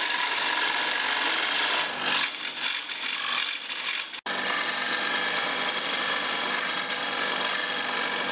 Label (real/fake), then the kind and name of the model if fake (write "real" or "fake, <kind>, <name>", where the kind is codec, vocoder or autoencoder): real